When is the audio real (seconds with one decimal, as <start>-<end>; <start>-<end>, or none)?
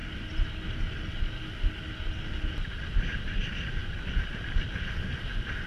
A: 0.0-5.7